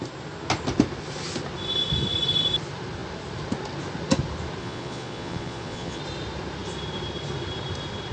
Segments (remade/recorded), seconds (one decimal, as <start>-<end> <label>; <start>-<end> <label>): 0.0-4.6 recorded; 4.6-6.0 remade; 6.0-8.1 recorded